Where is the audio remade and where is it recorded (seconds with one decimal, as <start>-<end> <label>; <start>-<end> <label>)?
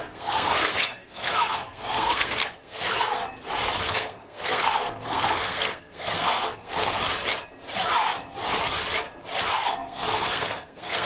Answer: 0.0-3.2 remade; 3.2-3.8 recorded; 3.8-7.0 remade; 7.0-9.5 recorded; 9.5-11.1 remade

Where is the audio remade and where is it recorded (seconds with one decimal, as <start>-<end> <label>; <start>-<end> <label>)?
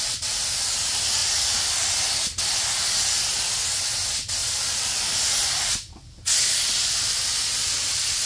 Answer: 0.0-1.2 recorded; 1.2-2.4 remade; 2.4-4.4 recorded; 4.4-5.0 remade; 5.0-8.3 recorded